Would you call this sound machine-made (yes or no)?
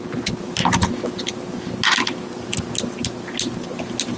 no